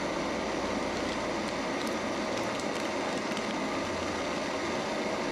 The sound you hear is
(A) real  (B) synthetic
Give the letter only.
A